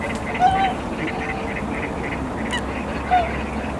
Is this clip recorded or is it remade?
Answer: recorded